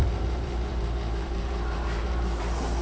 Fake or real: fake